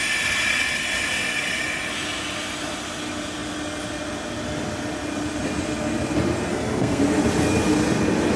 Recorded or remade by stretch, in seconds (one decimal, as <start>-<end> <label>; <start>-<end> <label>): 0.0-6.5 recorded; 6.5-7.0 remade; 7.0-8.4 recorded